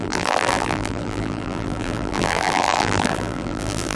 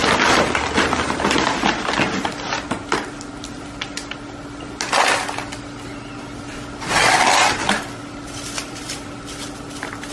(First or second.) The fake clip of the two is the first